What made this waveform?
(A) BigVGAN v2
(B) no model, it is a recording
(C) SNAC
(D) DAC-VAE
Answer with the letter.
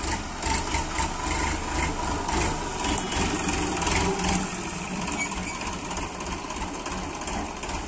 B